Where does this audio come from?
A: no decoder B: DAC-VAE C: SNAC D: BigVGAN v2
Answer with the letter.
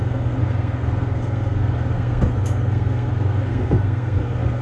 C